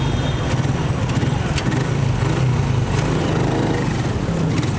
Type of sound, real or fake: real